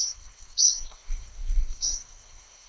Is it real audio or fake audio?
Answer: fake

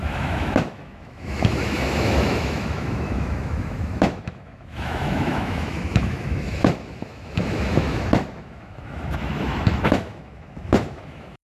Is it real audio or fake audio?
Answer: fake